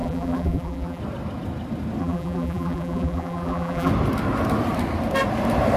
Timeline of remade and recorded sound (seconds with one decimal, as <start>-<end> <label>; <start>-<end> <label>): 0.0-1.0 remade; 1.0-2.0 recorded; 2.0-3.9 remade; 3.9-5.8 recorded